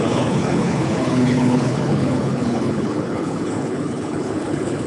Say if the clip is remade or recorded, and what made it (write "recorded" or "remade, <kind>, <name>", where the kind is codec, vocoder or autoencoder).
remade, codec, HILCodec